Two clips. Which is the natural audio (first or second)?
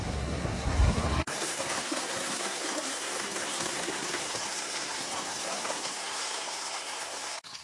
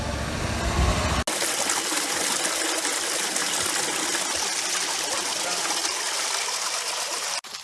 second